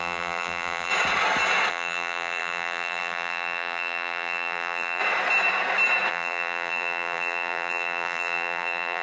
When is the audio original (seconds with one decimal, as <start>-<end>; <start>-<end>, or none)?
0.9-1.7; 5.0-6.1